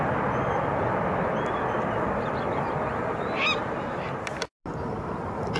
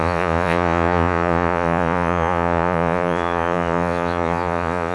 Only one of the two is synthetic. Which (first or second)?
second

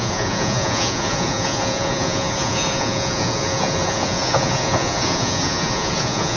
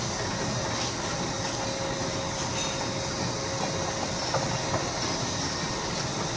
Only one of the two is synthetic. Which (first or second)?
first